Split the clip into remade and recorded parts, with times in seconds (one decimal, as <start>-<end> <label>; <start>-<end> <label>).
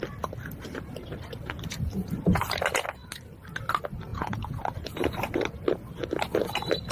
0.0-4.1 recorded; 4.1-4.6 remade; 4.6-6.9 recorded